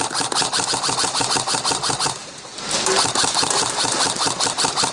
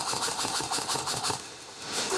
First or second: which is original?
first